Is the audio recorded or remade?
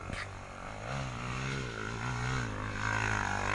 recorded